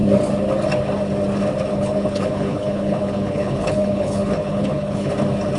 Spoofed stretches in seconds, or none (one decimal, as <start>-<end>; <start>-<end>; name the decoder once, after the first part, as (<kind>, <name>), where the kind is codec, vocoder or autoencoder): 1.7-5.1 (codec, HILCodec)